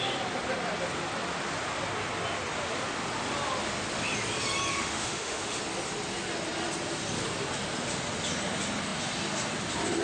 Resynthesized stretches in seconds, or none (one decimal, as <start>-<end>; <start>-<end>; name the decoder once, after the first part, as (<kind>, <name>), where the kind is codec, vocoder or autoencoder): 4.7-5.6 (autoencoder, DAC-VAE)